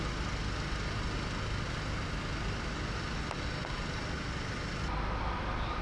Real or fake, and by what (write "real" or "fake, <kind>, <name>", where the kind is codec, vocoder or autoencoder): real